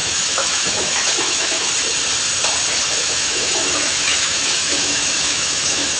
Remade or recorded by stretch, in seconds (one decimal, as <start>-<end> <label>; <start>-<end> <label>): 0.0-1.7 remade; 1.7-3.0 recorded; 3.0-6.0 remade